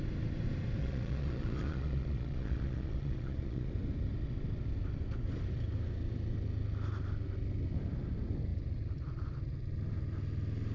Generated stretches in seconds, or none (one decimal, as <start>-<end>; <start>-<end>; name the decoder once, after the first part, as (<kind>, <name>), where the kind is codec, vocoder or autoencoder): 0.8-3.7 (vocoder, Vocos)